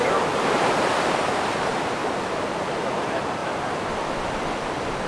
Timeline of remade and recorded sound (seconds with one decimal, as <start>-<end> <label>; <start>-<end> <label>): 0.0-2.0 remade; 2.0-2.6 recorded; 2.6-3.4 remade; 3.4-4.3 recorded; 4.3-5.1 remade